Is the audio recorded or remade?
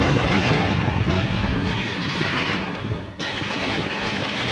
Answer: remade